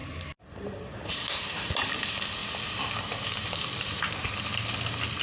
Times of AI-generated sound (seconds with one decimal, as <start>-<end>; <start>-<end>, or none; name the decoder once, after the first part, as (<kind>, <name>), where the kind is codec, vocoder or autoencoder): 0.0-1.7 (vocoder, BigVGAN v2); 2.4-4.4